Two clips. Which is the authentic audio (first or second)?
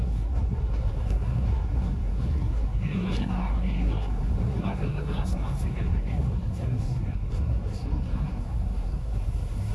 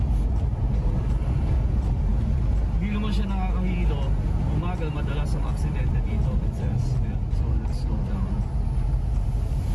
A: second